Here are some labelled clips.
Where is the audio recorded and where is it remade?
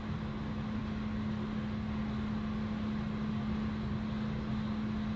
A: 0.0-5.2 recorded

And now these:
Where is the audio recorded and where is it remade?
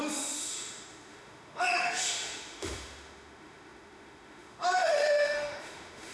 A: 0.0-6.1 remade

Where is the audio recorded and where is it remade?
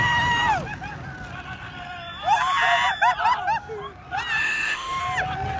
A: 0.0-4.4 recorded; 4.4-5.0 remade; 5.0-5.6 recorded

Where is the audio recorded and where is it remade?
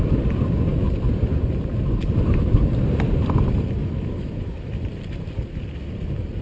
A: 0.0-3.8 recorded; 3.8-4.7 remade; 4.7-6.4 recorded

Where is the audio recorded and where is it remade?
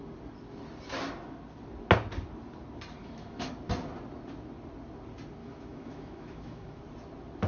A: 0.0-3.0 recorded; 3.0-3.5 remade; 3.5-5.4 recorded; 5.4-6.8 remade; 6.8-7.5 recorded